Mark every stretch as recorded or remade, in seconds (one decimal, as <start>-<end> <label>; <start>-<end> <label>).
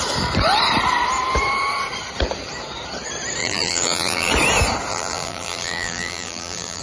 0.0-3.4 recorded; 3.4-4.3 remade; 4.3-4.9 recorded; 4.9-6.8 remade